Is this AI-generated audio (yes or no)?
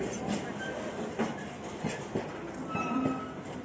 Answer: no